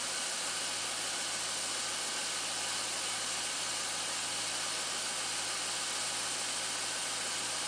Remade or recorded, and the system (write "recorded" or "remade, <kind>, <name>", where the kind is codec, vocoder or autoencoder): recorded